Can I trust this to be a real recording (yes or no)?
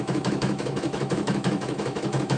no